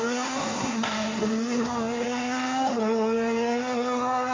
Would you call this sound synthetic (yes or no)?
yes